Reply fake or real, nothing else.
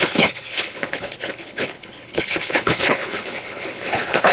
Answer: fake